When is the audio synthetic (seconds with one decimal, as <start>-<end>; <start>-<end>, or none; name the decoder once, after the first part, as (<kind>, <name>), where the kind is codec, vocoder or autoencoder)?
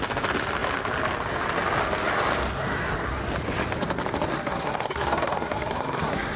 4.3-6.4 (codec, SNAC)